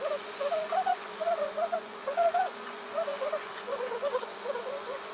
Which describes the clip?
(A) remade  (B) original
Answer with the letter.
A